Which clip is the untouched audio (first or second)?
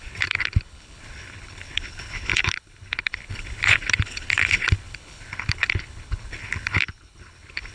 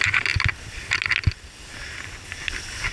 second